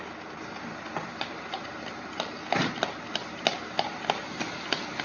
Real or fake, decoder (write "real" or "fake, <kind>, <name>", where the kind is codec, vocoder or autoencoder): real